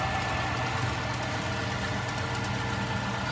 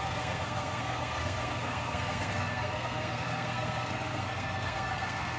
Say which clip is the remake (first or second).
second